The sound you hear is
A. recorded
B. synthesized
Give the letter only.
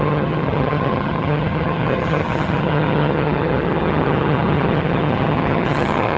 B